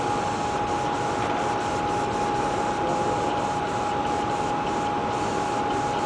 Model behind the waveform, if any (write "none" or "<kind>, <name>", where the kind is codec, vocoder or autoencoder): none